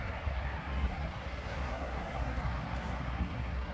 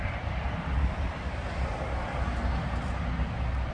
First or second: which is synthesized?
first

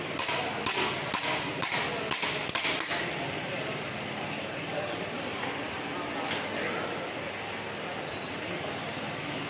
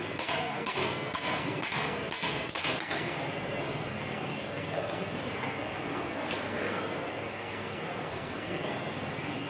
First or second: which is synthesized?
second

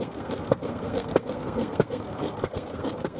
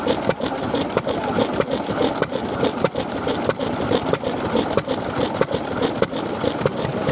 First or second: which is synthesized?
first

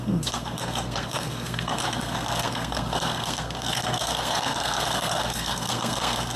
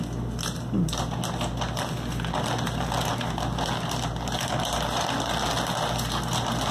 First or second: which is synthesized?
first